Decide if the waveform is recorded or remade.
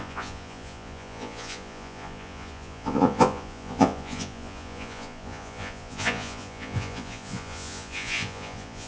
remade